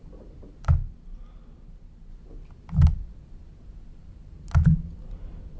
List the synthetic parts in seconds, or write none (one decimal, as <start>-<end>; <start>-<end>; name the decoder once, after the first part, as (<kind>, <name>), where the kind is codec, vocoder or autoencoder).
none